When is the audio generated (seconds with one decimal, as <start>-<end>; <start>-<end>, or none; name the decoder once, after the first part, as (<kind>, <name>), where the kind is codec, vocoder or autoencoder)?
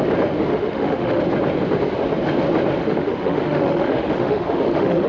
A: 0.5-1.2 (autoencoder, DAC-VAE); 2.8-5.1